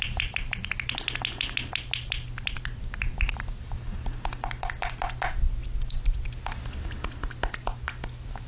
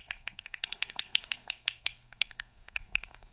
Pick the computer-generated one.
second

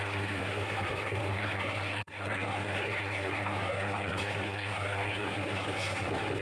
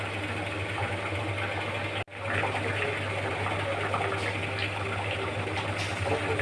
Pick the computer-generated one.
first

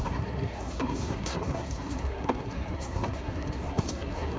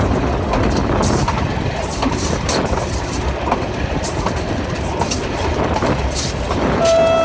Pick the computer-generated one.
first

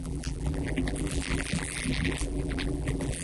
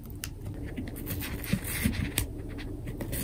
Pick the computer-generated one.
first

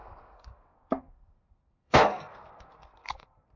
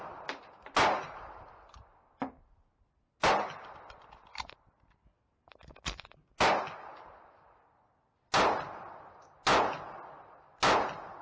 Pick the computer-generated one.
first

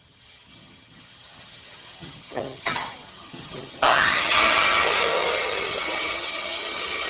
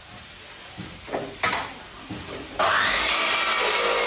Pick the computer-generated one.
first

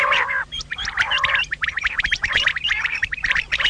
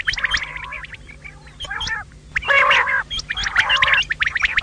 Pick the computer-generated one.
first